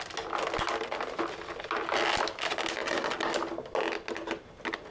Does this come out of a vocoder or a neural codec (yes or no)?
no